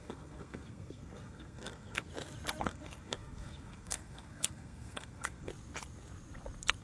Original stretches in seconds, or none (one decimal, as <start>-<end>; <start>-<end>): 2.1-2.6; 5.5-6.8

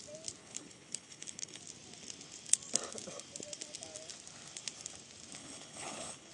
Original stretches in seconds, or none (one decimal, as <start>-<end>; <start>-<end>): 0.0-0.4; 1.6-5.4

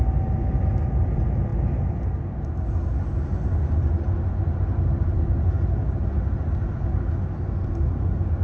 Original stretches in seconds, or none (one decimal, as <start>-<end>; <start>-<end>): 0.0-8.4

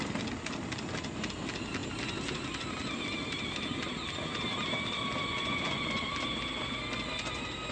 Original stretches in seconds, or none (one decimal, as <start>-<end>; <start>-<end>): 0.0-5.4; 6.0-7.7

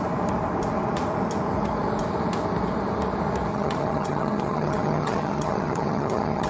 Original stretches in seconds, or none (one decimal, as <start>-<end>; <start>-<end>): 0.0-3.5

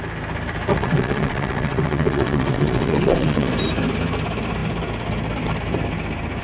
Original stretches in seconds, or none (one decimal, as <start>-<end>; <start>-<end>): 0.0-0.7; 3.5-6.4

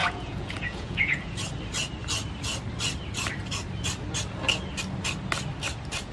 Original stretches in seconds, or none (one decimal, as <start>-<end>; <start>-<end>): 1.3-6.1